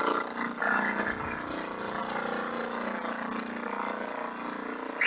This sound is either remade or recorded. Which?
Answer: recorded